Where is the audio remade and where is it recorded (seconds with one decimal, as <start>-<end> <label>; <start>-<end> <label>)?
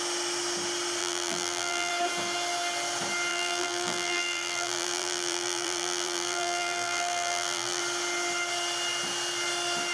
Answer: 0.0-1.0 recorded; 1.0-1.9 remade; 1.9-3.3 recorded; 3.3-7.8 remade; 7.8-9.9 recorded